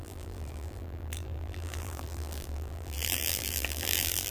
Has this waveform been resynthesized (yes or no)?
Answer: yes